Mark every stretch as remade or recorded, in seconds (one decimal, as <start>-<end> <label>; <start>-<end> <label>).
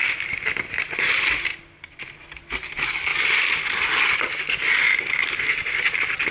0.0-6.3 recorded